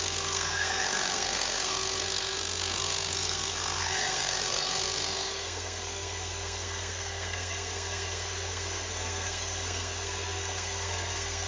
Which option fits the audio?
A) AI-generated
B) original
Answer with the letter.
A